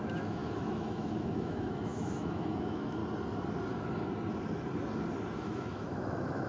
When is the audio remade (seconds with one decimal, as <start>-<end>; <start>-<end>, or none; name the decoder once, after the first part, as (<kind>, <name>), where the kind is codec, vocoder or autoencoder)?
0.0-3.0 (autoencoder, DAC-VAE); 5.3-6.5